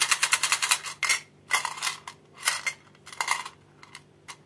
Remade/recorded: recorded